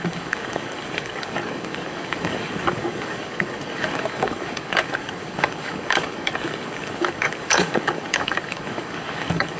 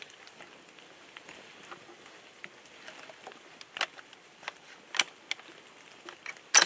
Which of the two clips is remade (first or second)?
first